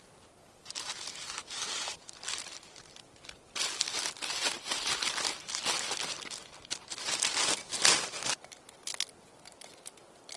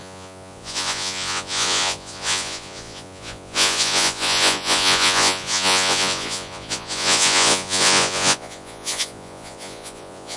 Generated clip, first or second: second